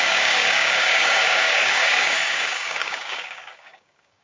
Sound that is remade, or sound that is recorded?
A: remade